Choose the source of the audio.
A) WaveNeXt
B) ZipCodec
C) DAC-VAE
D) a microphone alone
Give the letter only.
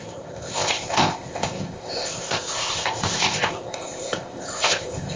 B